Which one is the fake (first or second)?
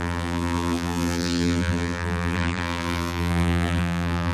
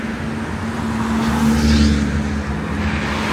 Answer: first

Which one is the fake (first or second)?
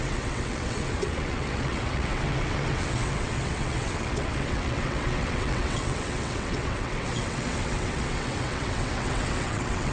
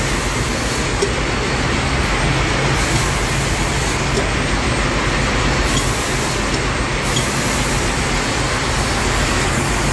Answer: first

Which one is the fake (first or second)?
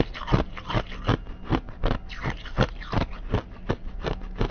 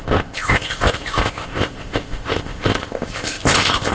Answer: second